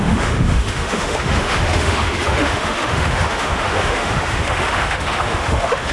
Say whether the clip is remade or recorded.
remade